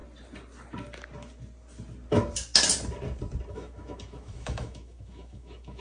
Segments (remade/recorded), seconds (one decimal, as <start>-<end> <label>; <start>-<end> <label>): 0.0-3.5 recorded; 3.5-5.8 remade